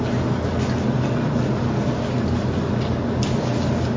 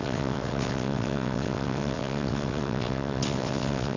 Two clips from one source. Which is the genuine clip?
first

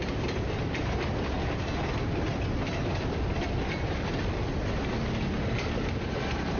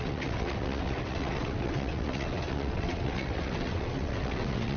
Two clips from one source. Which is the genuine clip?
first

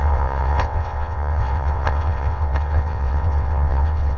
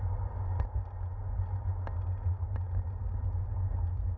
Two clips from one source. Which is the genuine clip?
second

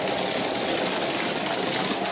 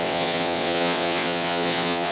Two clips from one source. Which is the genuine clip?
first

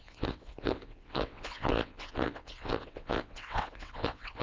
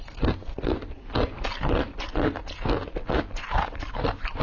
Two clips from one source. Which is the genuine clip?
second